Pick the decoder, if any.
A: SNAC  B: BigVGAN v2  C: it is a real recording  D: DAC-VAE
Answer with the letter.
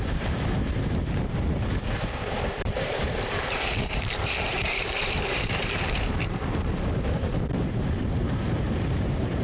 B